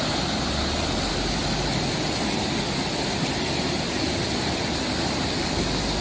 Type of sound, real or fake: real